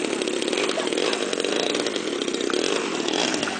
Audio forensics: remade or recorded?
recorded